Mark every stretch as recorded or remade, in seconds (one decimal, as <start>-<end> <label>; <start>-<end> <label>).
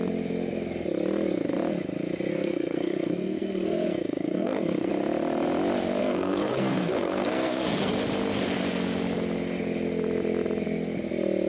0.0-2.3 recorded; 2.3-4.9 remade; 4.9-6.0 recorded; 6.0-7.9 remade; 7.9-11.5 recorded